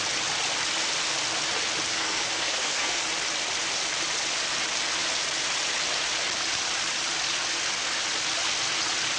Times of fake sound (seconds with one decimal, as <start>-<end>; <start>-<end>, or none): 1.9-3.0